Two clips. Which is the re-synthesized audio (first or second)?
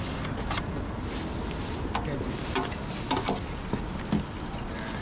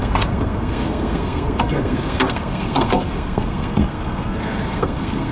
second